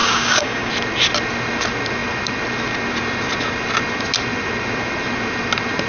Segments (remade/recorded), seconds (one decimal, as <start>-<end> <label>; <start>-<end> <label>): 0.0-0.7 remade; 0.7-5.9 recorded